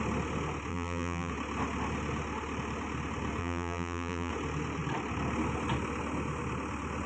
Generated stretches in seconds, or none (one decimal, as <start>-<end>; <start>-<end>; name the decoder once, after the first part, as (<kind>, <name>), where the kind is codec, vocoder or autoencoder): 0.7-1.3 (vocoder, BigVGAN v2); 3.4-4.3